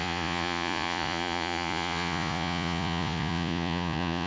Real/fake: fake